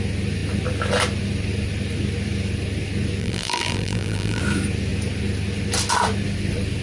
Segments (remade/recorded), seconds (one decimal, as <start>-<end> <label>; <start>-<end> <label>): 0.0-3.2 recorded; 3.2-4.4 remade; 4.4-6.8 recorded